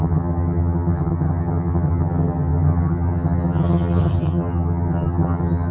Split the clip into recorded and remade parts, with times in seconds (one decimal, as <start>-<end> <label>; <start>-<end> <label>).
0.0-5.7 remade